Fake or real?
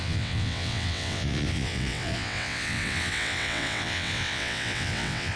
fake